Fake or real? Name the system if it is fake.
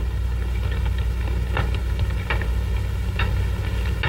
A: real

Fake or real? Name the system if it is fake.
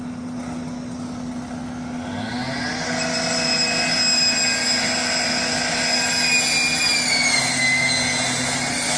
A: real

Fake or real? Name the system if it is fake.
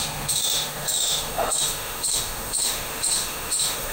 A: fake, autoencoder, DAC-VAE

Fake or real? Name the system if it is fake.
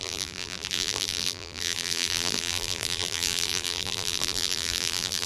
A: fake, vocoder, BigVGAN v2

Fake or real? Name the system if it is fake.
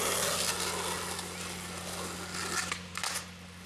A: real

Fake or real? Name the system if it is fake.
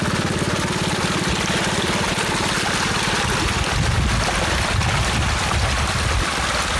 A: real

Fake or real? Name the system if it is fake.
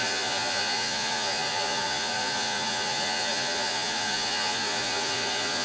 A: fake, vocoder, Vocos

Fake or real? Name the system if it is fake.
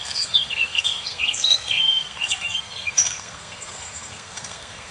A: fake, codec, SNAC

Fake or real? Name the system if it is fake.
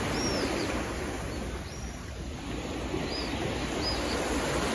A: real